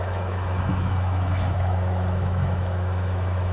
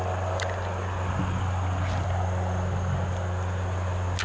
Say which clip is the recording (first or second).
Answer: second